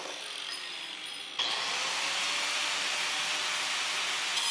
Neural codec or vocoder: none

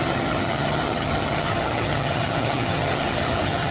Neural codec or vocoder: vocoder, HiFi-GAN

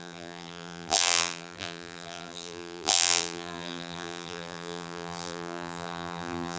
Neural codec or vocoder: vocoder, BigVGAN v2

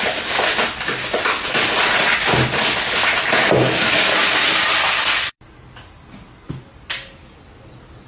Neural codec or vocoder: none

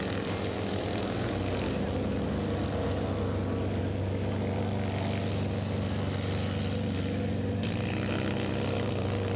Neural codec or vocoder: none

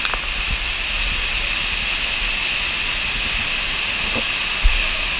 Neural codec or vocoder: none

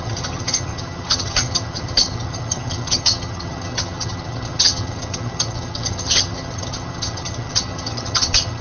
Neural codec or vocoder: vocoder, HiFi-GAN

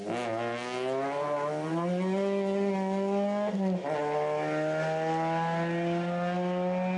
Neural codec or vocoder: none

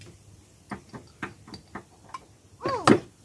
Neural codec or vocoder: none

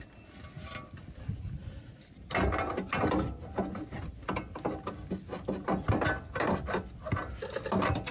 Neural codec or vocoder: none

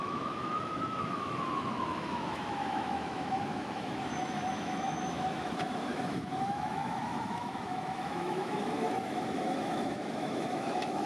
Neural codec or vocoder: autoencoder, DAC-VAE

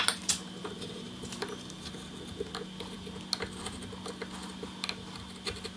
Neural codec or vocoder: none